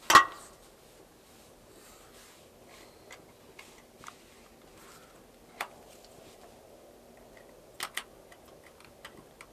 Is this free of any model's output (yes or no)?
yes